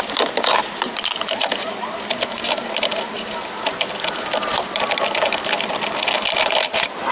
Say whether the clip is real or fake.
real